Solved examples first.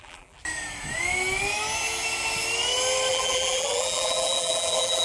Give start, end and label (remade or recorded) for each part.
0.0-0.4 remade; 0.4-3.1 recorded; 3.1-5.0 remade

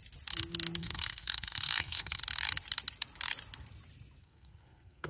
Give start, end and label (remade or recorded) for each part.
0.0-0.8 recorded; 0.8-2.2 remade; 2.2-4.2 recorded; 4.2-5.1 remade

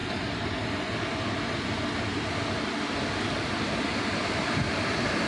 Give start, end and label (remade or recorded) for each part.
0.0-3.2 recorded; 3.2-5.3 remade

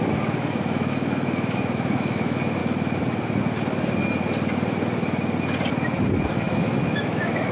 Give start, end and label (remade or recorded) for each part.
0.0-2.6 remade; 2.6-6.3 recorded; 6.3-7.5 remade

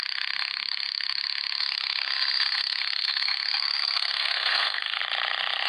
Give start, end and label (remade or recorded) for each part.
0.0-1.6 recorded; 1.6-5.0 remade; 5.0-5.7 recorded

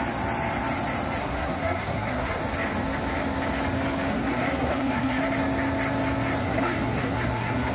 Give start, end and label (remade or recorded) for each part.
0.0-1.2 recorded; 1.2-2.4 remade; 2.4-4.1 recorded; 4.1-5.2 remade; 5.2-6.4 recorded; 6.4-7.7 remade

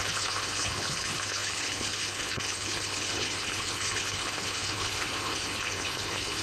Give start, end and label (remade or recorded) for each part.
0.0-6.4 remade

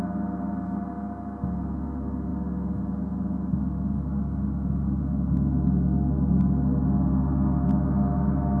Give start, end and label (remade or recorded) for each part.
0.0-8.6 recorded